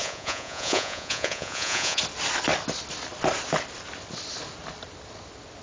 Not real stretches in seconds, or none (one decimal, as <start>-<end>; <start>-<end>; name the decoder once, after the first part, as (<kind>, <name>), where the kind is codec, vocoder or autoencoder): 0.0-2.0 (vocoder, Vocos)